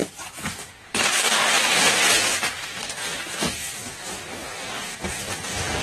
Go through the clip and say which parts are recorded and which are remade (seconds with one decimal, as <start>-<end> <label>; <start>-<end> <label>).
0.0-0.5 recorded; 0.5-5.8 remade

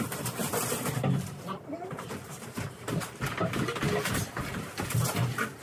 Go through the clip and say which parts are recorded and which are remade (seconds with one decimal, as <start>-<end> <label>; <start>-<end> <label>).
0.0-5.6 recorded

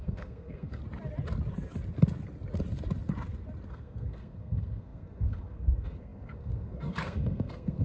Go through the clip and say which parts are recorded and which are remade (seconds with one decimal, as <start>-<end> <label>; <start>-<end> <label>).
0.0-0.8 remade; 0.8-3.7 recorded; 3.7-7.8 remade

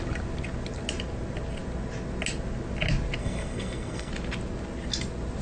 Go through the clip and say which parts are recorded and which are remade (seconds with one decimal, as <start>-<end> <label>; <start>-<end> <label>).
0.0-3.2 recorded; 3.2-4.1 remade; 4.1-5.4 recorded

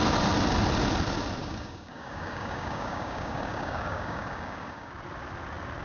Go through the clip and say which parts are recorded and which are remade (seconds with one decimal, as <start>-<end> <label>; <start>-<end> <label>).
0.0-1.4 recorded; 1.4-4.9 remade; 4.9-5.8 recorded

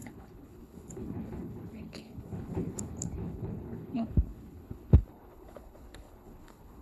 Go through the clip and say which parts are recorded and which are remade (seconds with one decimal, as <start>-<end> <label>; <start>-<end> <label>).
0.0-6.8 remade